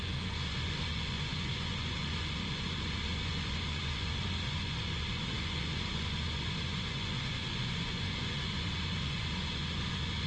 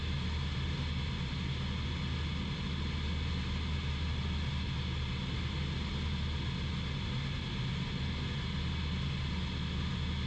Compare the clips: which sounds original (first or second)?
second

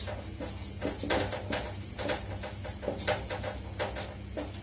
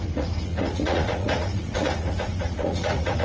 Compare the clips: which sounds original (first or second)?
first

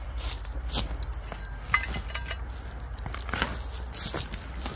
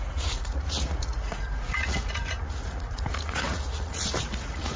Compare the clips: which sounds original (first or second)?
first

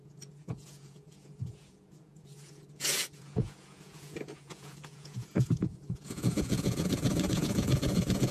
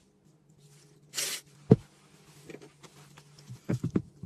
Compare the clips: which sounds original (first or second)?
second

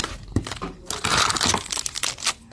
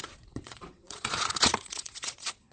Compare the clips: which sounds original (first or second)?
first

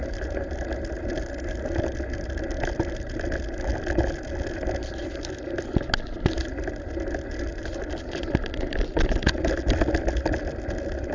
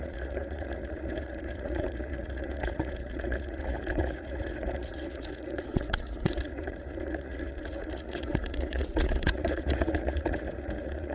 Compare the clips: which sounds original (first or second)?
first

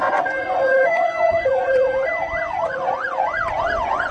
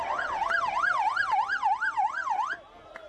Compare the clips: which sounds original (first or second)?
second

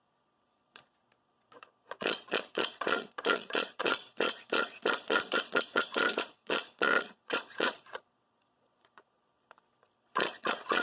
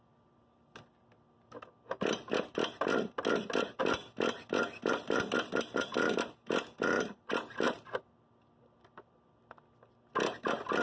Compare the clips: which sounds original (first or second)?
second